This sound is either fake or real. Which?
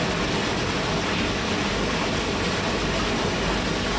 real